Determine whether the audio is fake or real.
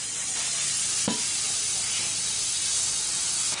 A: real